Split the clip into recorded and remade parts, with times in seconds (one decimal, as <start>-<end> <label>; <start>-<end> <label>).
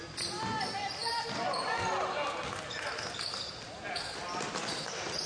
0.0-5.3 recorded